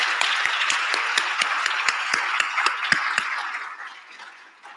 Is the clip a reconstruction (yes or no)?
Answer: yes